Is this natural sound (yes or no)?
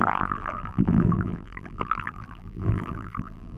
no